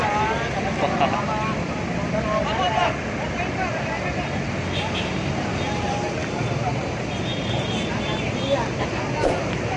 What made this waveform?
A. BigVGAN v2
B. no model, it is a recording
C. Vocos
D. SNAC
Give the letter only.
B